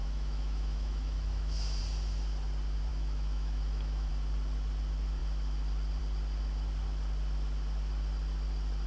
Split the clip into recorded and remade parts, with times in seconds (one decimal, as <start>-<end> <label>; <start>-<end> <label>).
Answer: 0.0-1.8 remade; 1.8-2.9 recorded; 2.9-4.1 remade; 4.1-8.9 recorded